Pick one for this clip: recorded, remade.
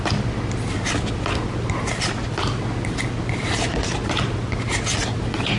recorded